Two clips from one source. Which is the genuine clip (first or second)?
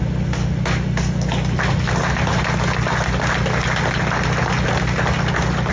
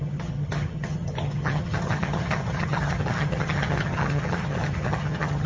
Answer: first